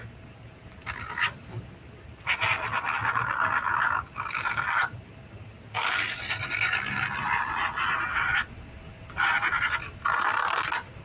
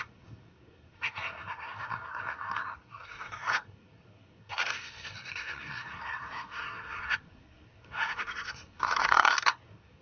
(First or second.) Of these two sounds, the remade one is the second